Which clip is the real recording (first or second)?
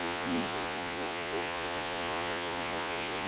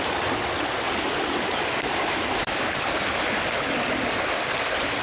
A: second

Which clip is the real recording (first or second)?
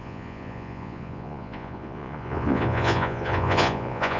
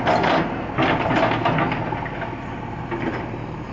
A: second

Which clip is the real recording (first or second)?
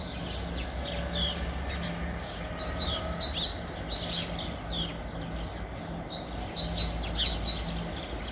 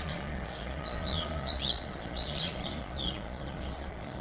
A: first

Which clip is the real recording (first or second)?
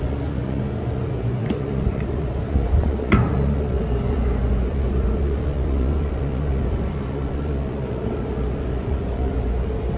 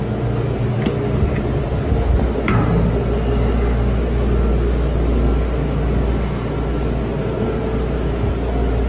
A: second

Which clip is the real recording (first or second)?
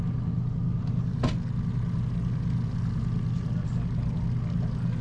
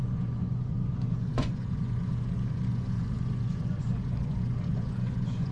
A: first